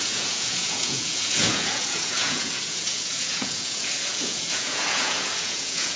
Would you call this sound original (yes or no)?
no